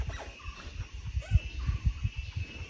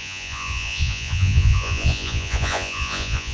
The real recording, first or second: first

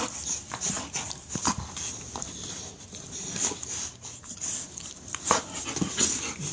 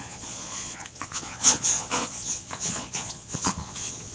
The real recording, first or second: first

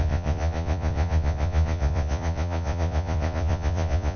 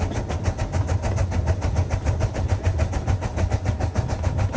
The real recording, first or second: second